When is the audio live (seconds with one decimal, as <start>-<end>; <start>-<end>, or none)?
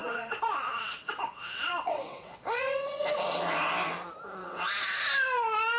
3.5-4.4; 5.0-5.8